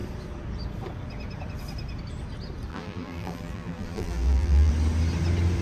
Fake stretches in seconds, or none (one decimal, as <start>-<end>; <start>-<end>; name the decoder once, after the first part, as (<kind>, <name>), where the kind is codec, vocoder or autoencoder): 2.7-4.7 (vocoder, BigVGAN v2)